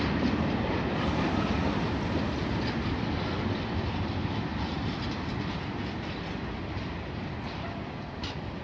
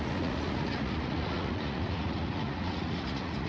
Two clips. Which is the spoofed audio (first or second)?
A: second